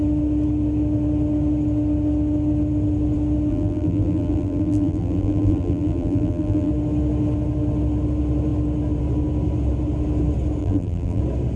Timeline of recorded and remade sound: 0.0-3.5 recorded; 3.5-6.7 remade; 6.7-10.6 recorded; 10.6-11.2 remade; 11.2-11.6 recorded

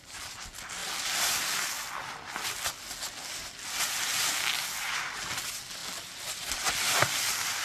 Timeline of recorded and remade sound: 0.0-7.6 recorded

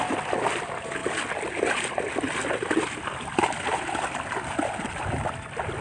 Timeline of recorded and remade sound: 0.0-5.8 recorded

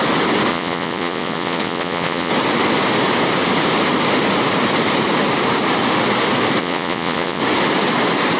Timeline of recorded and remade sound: 0.0-0.5 recorded; 0.5-2.3 remade; 2.3-6.6 recorded; 6.6-7.4 remade; 7.4-8.4 recorded

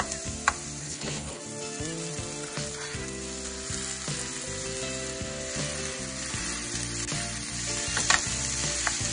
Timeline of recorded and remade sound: 0.0-0.8 recorded; 0.8-1.4 remade; 1.4-9.1 recorded

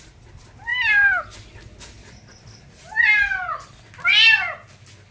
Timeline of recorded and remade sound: 0.0-5.1 recorded

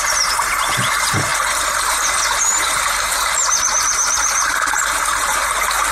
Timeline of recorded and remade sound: 0.0-5.4 remade; 5.4-5.9 recorded